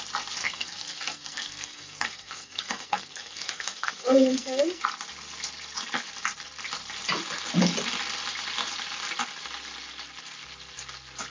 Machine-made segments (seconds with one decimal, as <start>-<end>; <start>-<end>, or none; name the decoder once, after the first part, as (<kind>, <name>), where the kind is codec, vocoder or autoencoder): 0.4-4.8 (codec, SNAC)